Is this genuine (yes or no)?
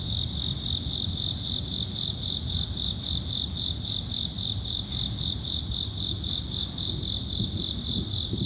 yes